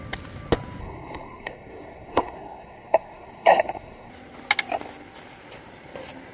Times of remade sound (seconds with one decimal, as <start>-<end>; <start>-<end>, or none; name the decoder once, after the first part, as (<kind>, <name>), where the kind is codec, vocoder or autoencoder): 0.8-4.1 (codec, SNAC)